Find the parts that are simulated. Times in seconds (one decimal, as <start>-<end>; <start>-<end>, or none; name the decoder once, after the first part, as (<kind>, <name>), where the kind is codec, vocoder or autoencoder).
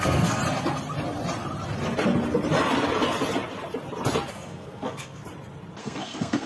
0.0-0.4 (codec, SNAC); 4.3-5.2; 5.8-6.5